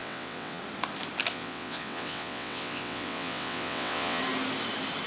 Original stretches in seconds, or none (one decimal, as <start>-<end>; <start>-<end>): 0.6-1.3; 4.2-5.1